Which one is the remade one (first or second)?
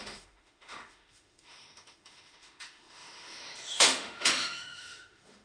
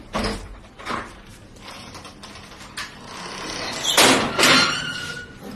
first